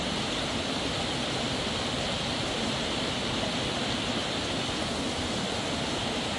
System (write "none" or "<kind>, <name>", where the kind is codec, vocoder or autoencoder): vocoder, BigVGAN v2